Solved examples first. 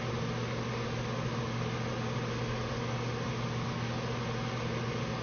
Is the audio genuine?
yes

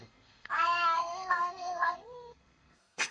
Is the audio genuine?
no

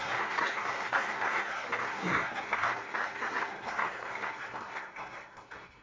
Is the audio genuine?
no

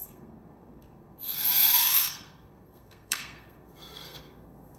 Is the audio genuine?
no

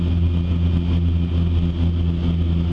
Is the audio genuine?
yes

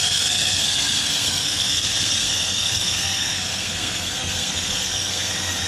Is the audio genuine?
no